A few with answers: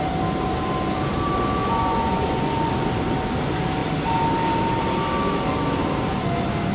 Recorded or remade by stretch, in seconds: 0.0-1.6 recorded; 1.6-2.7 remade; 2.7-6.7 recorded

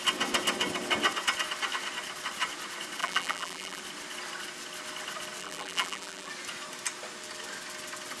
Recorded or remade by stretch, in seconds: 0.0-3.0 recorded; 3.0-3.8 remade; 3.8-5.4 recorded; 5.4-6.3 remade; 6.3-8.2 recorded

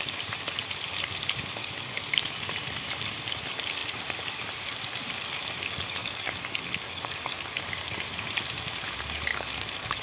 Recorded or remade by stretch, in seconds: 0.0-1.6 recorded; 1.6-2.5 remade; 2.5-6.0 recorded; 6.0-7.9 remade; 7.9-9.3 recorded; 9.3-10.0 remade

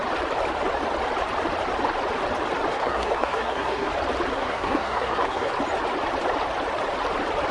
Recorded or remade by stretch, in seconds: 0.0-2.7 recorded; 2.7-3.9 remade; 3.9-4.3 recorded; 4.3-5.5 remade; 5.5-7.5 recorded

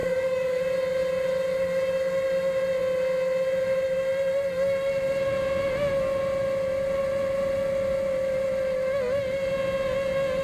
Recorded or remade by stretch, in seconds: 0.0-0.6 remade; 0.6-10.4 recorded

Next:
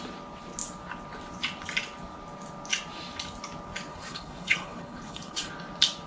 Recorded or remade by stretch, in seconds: 0.0-3.9 recorded; 3.9-5.5 remade; 5.5-6.1 recorded